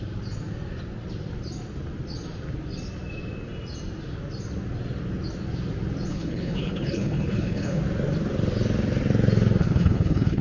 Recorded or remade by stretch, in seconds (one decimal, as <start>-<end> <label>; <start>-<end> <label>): 0.0-6.1 recorded; 6.1-7.8 remade; 7.8-9.6 recorded; 9.6-10.4 remade

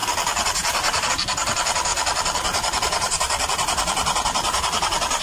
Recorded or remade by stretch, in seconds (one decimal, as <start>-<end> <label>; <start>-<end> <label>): 0.0-1.1 remade; 1.1-1.9 recorded; 1.9-5.2 remade